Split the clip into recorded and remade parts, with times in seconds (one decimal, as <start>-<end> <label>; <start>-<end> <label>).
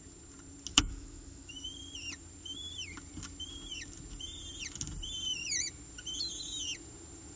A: 0.0-0.7 recorded; 0.7-1.5 remade; 1.5-7.4 recorded